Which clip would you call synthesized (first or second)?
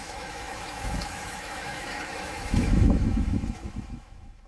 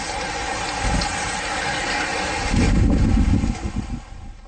first